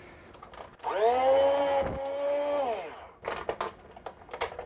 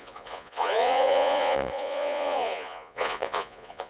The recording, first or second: first